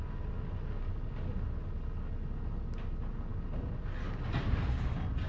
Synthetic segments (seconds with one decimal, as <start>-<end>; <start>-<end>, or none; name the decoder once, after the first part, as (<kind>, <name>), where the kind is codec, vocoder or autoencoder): none